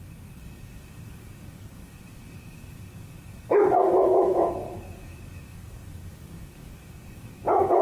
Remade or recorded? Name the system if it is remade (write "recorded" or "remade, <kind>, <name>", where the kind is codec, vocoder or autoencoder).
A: remade, codec, DAC